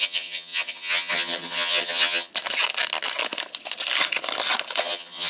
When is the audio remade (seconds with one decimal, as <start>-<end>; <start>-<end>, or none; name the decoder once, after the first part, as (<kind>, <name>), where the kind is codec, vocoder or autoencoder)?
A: 0.0-2.3 (vocoder, HiFi-GAN); 4.8-5.3